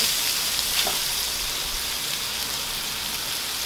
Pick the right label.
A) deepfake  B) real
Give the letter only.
A